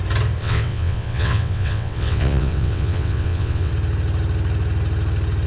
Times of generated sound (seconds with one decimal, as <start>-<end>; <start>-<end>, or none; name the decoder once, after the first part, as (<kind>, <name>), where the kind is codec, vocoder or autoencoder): 0.4-3.7 (vocoder, WaveNeXt)